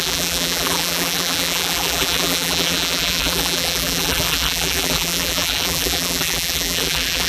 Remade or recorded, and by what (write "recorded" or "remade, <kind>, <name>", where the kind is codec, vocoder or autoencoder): remade, vocoder, BigVGAN v2